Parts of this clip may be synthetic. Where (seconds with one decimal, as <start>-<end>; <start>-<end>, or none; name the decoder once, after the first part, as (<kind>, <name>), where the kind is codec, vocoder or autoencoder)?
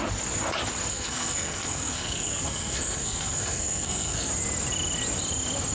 0.9-4.3 (codec, SNAC)